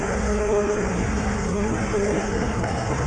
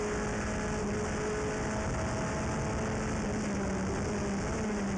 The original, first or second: second